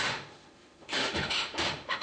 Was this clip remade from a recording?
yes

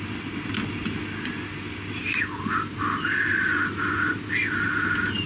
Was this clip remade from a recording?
no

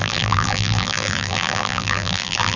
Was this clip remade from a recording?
yes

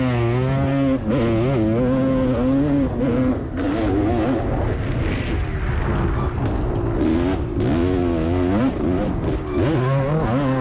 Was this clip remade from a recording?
no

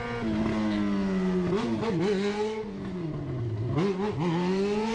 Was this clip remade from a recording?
no